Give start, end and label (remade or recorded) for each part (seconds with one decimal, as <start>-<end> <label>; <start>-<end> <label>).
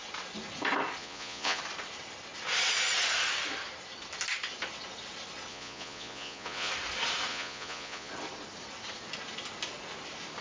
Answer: 0.0-1.0 recorded; 1.0-1.6 remade; 1.6-5.5 recorded; 5.5-6.7 remade; 6.7-7.3 recorded; 7.3-8.1 remade; 8.1-10.4 recorded